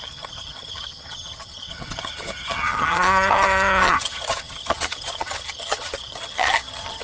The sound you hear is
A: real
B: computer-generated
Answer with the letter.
B